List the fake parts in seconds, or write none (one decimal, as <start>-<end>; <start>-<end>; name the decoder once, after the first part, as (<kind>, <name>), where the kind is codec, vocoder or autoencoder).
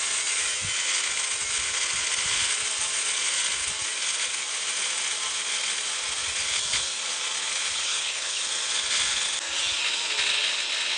7.7-8.4 (codec, HILCodec)